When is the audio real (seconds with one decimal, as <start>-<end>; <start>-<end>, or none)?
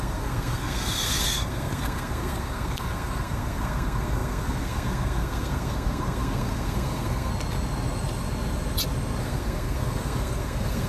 7.3-9.2